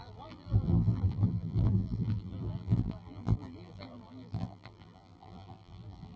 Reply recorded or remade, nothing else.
remade